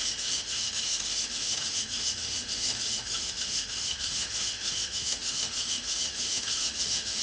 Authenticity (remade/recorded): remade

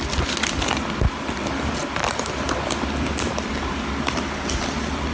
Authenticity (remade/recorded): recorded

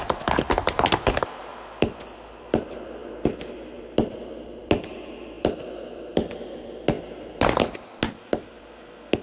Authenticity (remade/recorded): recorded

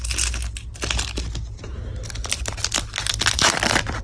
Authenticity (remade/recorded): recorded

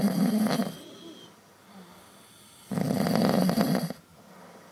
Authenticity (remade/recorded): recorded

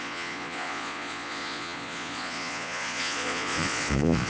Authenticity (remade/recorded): remade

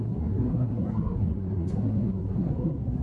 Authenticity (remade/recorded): remade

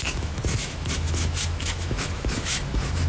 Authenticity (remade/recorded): remade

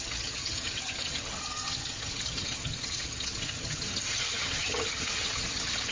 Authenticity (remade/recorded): remade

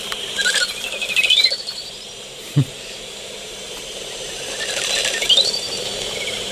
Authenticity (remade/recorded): remade